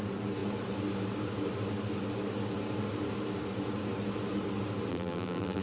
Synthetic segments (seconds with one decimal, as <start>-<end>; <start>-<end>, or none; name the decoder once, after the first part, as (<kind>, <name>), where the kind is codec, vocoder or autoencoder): 4.9-5.6 (vocoder, BigVGAN v2)